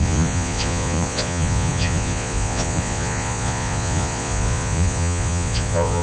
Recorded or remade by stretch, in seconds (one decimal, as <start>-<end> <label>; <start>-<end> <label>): 0.0-6.0 remade